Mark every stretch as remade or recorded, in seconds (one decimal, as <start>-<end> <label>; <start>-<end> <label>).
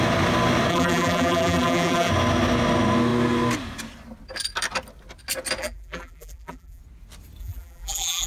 0.0-0.7 recorded; 0.7-2.1 remade; 2.1-5.6 recorded; 5.6-6.8 remade; 6.8-7.4 recorded; 7.4-8.3 remade